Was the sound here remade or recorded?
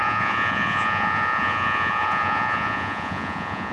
remade